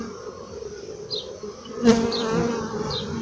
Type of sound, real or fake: real